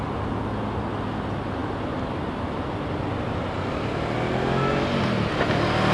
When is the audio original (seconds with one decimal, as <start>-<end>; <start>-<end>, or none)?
0.0-5.9